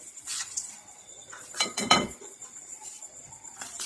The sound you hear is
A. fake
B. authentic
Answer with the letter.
A